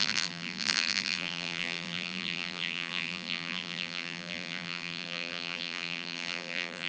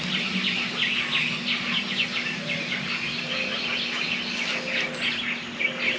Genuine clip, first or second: second